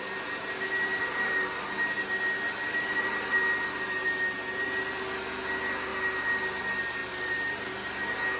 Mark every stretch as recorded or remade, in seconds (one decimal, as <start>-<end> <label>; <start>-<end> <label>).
0.0-0.9 recorded; 0.9-1.6 remade; 1.6-7.0 recorded; 7.0-7.7 remade; 7.7-8.4 recorded